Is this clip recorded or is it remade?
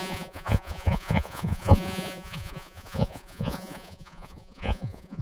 remade